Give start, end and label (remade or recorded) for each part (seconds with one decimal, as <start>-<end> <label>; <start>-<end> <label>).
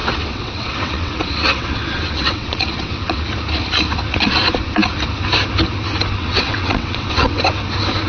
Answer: 0.0-3.2 remade; 3.2-6.2 recorded; 6.2-7.5 remade; 7.5-8.1 recorded